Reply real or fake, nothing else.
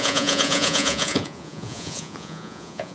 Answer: fake